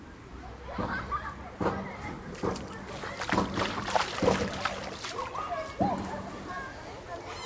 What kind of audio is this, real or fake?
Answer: real